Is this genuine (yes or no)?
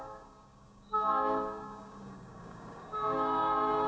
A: no